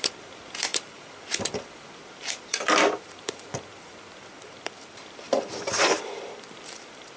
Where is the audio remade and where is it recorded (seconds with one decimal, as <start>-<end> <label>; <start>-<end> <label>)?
0.0-7.2 remade